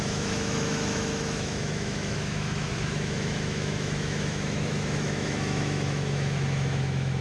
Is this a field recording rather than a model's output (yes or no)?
no